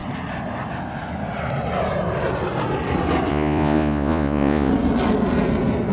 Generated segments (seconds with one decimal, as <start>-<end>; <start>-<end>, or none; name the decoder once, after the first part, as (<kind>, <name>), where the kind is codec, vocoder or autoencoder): 3.3-4.7 (vocoder, Vocos)